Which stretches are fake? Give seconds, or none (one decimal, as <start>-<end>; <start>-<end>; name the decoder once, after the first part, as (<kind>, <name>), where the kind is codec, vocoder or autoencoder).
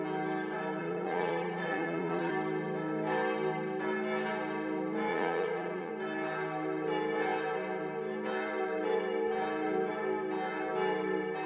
0.8-2.3 (vocoder, Vocos); 5.1-5.9